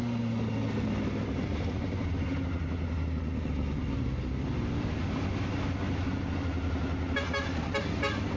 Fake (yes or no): no